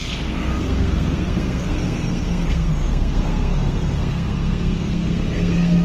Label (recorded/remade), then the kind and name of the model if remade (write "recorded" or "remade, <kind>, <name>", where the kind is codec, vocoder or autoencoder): remade, codec, SNAC